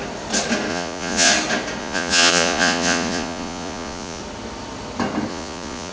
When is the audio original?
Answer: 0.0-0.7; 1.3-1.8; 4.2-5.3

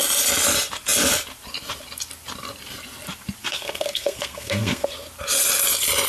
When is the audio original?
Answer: 0.0-3.4; 4.9-6.1

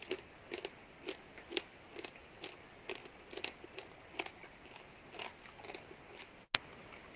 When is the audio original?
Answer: 0.0-7.2